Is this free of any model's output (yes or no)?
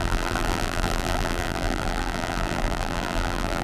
no